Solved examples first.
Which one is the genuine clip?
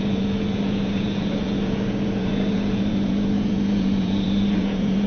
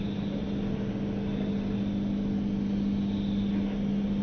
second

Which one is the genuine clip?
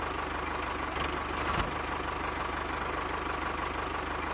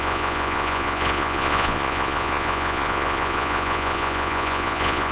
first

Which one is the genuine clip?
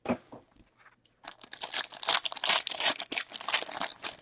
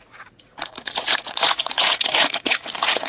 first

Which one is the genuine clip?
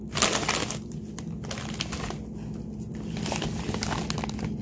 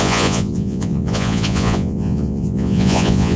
first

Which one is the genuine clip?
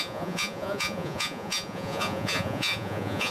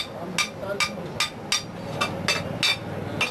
second